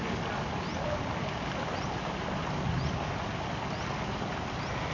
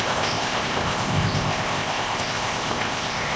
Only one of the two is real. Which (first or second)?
first